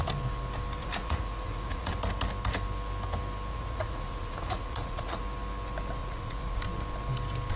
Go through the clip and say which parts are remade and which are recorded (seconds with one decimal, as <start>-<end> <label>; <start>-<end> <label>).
0.0-0.8 recorded; 0.8-1.9 remade; 1.9-3.5 recorded; 3.5-5.2 remade; 5.2-6.0 recorded; 6.0-6.6 remade; 6.6-7.6 recorded